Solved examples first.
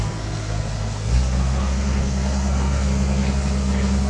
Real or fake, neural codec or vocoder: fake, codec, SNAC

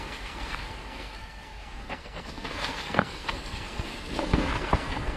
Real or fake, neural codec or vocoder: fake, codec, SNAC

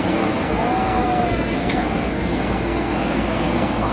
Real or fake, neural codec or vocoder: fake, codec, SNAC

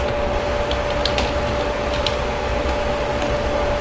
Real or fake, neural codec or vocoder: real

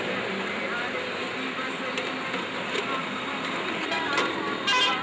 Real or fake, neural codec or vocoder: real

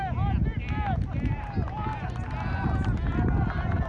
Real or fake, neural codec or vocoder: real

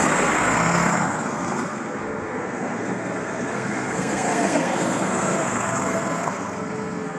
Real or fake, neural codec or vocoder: fake, codec, SNAC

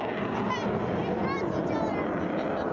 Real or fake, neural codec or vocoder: real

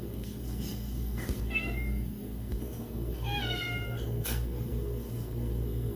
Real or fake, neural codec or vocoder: fake, codec, SNAC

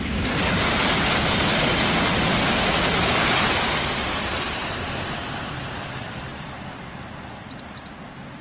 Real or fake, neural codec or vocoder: real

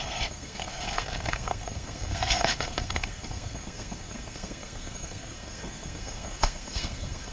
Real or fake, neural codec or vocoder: fake, codec, SNAC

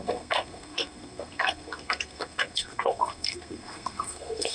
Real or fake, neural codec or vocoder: fake, codec, SNAC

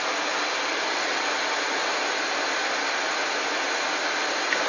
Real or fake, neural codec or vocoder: real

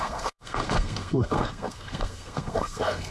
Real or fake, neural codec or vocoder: fake, codec, SNAC